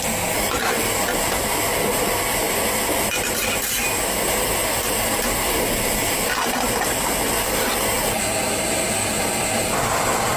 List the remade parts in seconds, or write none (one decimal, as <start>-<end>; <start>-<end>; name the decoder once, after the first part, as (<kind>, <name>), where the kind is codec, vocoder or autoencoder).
none